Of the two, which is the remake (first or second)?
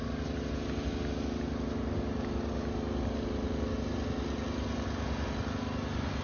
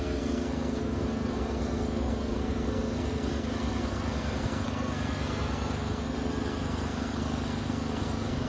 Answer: second